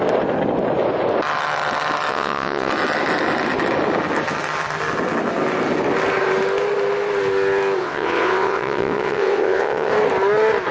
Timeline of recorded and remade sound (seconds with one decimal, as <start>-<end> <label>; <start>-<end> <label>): 0.0-2.1 recorded; 2.1-2.7 remade; 2.7-7.8 recorded; 7.8-9.9 remade; 9.9-10.7 recorded